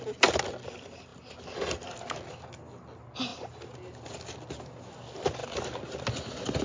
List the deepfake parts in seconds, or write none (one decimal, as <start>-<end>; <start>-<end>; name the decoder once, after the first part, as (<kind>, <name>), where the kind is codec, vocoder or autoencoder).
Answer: none